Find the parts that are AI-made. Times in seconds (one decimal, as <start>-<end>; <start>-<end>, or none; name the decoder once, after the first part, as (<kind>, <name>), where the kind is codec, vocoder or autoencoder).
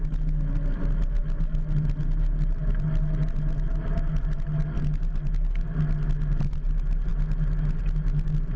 none